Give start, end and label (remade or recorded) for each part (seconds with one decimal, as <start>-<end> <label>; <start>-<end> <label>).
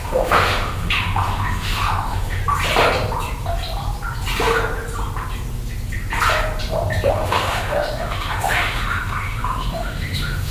0.0-2.4 remade; 2.4-7.1 recorded; 7.1-10.5 remade